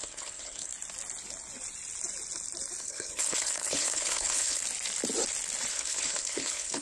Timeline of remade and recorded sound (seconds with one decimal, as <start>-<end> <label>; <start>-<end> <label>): 0.0-0.7 remade; 0.7-2.8 recorded; 2.8-4.6 remade; 4.6-5.7 recorded; 5.7-6.8 remade